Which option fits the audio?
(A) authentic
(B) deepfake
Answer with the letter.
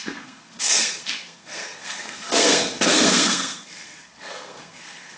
B